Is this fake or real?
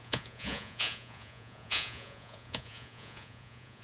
fake